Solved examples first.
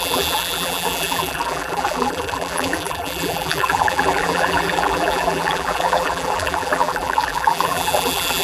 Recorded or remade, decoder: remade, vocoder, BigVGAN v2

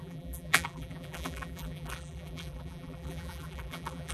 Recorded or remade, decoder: remade, vocoder, BigVGAN v2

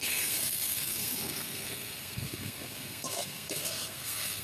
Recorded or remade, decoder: remade, codec, SNAC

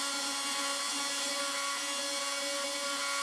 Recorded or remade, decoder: recorded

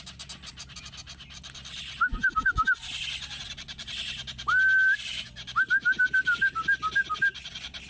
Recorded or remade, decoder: recorded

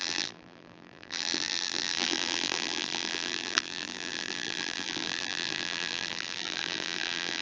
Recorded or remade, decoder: remade, vocoder, BigVGAN v2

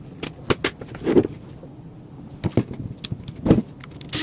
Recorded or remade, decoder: recorded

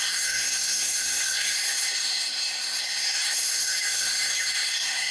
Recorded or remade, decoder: remade, codec, SNAC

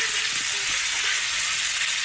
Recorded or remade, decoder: recorded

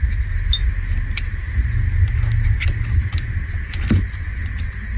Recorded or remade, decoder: recorded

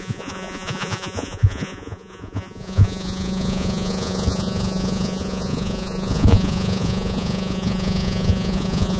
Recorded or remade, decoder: remade, vocoder, Vocos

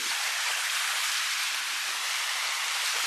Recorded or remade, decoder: remade, vocoder, BigVGAN v2